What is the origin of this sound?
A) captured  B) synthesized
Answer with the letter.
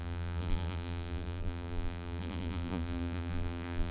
B